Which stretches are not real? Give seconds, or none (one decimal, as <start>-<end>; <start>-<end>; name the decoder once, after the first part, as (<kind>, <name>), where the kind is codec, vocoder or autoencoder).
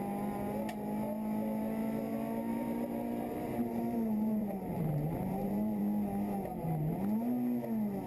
2.5-5.8 (vocoder, BigVGAN v2)